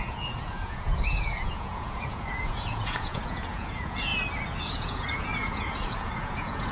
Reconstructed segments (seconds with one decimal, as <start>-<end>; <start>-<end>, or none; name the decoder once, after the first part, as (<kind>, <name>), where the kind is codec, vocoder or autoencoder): 0.0-4.1 (vocoder, Vocos); 4.6-6.7